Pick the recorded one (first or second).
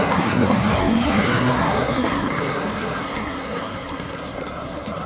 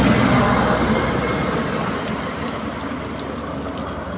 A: second